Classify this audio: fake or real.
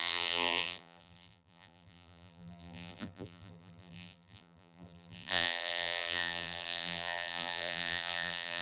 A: fake